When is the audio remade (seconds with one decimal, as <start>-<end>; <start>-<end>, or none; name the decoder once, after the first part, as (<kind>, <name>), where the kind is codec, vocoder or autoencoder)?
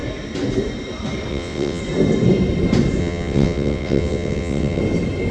1.3-1.8 (vocoder, WaveNeXt); 3.0-4.8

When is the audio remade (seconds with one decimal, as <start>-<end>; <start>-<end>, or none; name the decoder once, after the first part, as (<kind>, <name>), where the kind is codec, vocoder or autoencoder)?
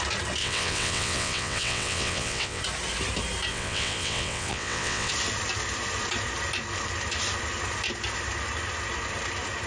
0.4-2.6 (vocoder, WaveNeXt); 3.5-5.1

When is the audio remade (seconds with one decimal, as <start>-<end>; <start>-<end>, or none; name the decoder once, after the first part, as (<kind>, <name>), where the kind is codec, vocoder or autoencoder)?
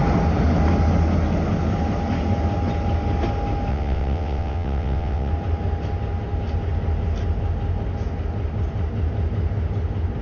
3.7-5.3 (vocoder, WaveNeXt)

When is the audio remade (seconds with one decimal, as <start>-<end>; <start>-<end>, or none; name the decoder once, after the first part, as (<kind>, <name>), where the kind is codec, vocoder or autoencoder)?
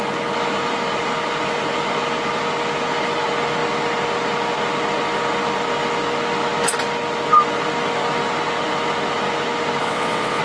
9.8-10.4 (vocoder, WaveNeXt)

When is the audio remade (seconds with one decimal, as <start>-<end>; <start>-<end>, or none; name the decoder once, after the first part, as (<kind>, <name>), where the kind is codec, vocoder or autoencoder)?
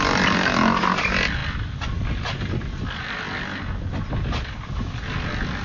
none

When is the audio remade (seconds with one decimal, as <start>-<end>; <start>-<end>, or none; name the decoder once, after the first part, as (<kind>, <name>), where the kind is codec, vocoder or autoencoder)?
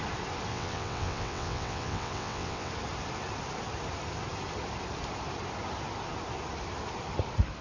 0.5-2.7 (vocoder, WaveNeXt)